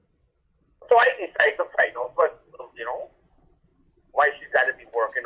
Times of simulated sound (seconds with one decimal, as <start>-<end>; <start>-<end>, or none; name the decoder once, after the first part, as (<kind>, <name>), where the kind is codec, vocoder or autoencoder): 0.0-2.8 (vocoder, WaveNeXt)